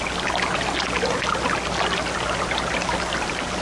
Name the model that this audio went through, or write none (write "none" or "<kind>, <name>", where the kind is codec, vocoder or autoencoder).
none